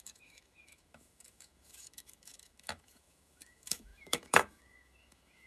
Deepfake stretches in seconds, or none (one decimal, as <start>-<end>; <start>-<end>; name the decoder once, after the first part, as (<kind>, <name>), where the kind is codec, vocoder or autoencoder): 0.0-5.5 (autoencoder, DAC-VAE)